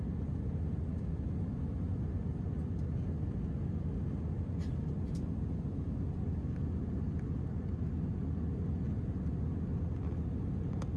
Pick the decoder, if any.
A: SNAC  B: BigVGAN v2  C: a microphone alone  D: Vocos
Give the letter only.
C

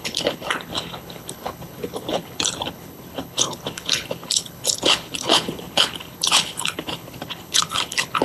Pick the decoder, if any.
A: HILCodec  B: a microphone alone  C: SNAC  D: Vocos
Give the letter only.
A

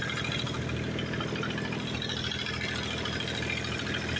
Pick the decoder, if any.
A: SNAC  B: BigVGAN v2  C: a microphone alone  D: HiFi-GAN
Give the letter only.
C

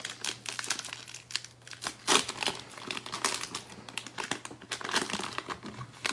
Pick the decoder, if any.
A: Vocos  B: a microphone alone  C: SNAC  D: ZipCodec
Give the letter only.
B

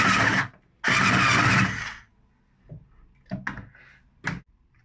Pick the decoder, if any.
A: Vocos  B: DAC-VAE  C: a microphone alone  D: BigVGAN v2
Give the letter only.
C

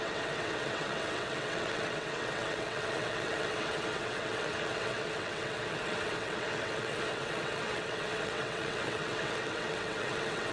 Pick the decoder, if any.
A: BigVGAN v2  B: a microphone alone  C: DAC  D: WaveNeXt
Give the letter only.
D